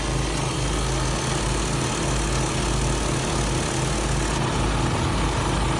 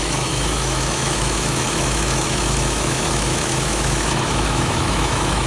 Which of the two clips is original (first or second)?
first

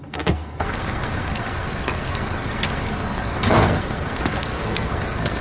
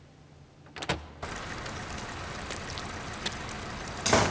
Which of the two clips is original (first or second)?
second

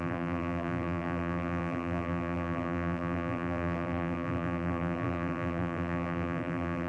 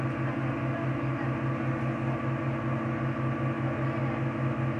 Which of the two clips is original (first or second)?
second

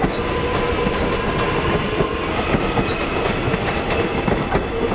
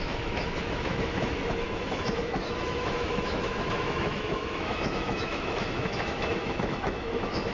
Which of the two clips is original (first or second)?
first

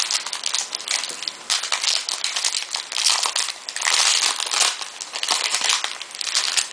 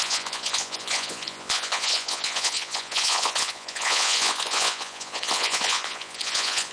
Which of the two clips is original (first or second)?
first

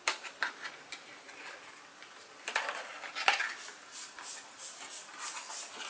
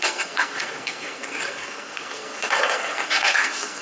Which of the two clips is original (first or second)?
first